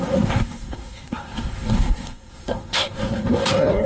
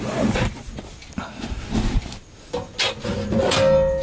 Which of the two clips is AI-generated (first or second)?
first